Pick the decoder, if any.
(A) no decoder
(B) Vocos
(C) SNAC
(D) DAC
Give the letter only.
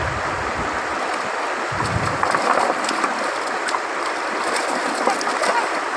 A